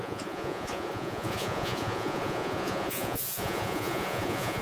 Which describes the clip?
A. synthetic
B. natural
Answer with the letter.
A